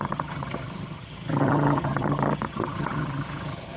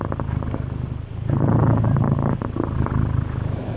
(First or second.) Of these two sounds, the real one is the second